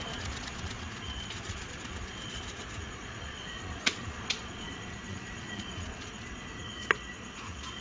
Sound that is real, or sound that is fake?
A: fake